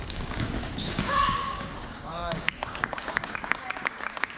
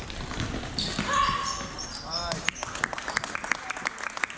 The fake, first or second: first